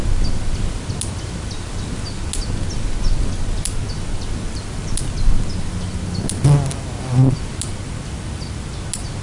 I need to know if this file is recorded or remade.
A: recorded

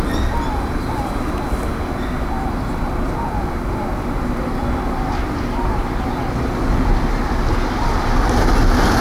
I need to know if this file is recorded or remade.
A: recorded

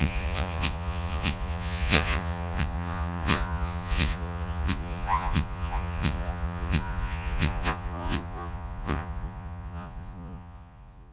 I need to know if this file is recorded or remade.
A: remade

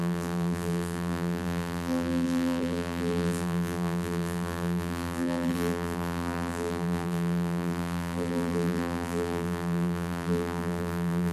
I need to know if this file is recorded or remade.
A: remade